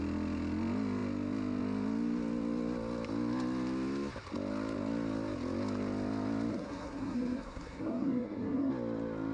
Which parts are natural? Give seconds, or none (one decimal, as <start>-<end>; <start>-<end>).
0.0-6.5; 8.7-9.3